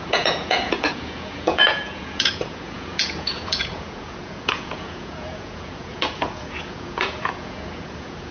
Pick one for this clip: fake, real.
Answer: fake